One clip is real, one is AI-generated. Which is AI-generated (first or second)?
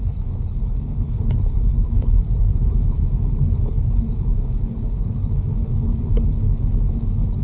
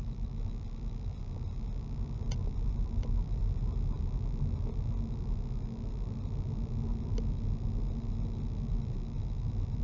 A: first